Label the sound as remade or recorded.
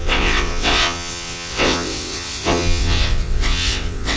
remade